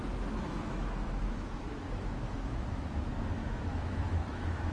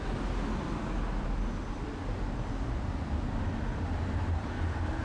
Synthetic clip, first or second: first